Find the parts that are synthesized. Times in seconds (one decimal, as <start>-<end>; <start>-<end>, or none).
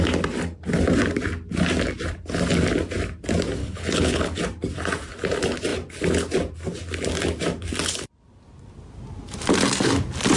3.6-4.4